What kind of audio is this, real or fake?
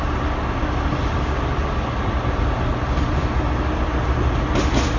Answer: real